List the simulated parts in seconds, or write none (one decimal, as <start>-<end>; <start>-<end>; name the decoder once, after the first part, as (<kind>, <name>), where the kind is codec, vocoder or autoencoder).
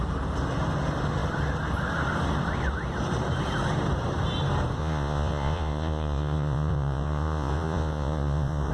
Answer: 4.8-8.7 (vocoder, Vocos)